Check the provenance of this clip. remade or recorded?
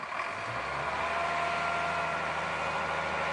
recorded